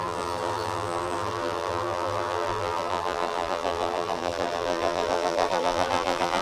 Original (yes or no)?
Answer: no